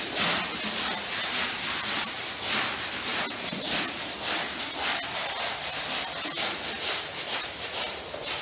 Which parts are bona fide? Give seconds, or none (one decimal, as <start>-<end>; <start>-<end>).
0.0-8.4